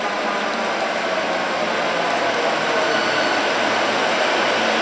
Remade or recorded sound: recorded